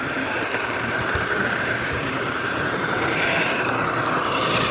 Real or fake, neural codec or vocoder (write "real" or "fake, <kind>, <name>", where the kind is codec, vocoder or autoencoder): fake, vocoder, BigVGAN v2